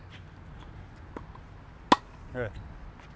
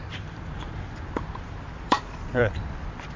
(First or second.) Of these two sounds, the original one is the first